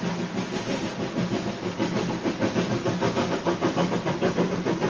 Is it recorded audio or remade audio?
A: recorded